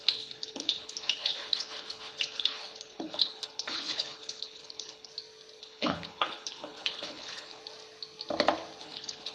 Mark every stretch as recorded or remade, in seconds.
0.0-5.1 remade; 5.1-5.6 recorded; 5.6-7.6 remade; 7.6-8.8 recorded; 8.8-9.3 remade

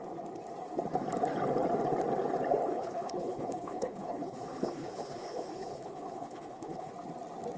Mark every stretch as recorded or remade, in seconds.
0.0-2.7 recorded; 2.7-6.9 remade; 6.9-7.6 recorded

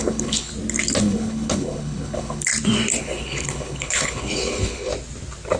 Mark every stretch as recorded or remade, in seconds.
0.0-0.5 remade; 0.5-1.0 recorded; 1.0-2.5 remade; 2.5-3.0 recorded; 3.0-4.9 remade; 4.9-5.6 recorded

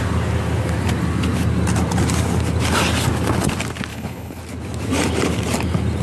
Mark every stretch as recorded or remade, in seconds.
0.0-3.9 recorded; 3.9-4.4 remade; 4.4-6.0 recorded